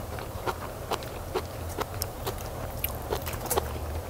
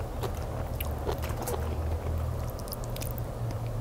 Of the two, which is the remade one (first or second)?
first